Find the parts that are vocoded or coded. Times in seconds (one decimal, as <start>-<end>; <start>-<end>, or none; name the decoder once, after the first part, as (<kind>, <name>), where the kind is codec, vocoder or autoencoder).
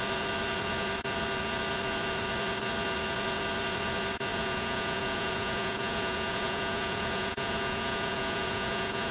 4.3-9.1 (vocoder, Vocos)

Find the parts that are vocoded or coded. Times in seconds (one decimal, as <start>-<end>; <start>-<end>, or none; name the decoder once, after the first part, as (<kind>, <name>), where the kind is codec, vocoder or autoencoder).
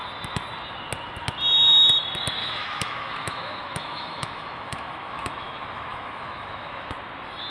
2.4-6.9 (autoencoder, DAC-VAE)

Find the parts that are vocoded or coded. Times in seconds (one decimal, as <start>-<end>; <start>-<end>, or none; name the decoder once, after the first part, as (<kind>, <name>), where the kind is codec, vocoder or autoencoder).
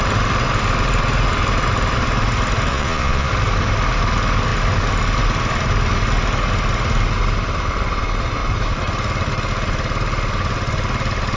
2.7-3.3 (vocoder, Vocos)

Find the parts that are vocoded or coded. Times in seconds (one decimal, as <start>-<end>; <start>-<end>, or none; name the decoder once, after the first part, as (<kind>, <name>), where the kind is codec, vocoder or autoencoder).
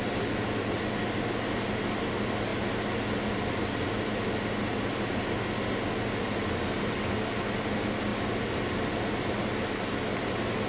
none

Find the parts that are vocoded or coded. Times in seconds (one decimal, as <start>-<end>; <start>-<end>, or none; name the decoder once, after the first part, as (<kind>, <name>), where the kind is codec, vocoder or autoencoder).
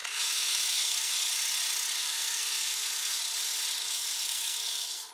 0.0-1.1 (codec, SNAC); 2.0-3.2; 3.8-5.1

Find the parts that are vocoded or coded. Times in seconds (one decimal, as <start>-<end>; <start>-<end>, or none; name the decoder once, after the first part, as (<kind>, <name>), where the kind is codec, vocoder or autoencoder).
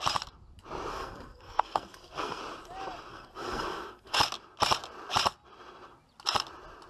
0.9-2.4 (codec, SNAC); 3.1-4.2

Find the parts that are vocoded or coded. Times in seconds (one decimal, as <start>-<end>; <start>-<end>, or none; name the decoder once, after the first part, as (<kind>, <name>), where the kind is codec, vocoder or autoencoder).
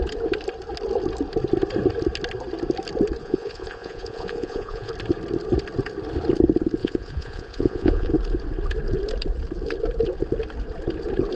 3.2-4.9 (vocoder, Vocos); 6.8-8.1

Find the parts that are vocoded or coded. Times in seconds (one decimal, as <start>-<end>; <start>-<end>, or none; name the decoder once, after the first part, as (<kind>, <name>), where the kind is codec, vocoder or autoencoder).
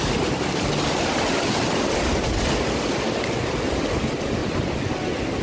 none